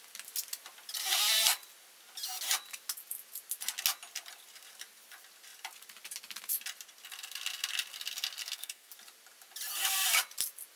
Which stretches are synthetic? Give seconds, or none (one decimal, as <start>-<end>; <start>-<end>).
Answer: 8.4-8.9